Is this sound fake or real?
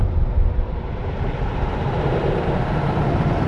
fake